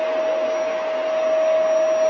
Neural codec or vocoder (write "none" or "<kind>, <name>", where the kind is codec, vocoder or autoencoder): none